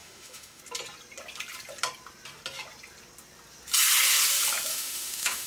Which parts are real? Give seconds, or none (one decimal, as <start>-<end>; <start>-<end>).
0.6-4.7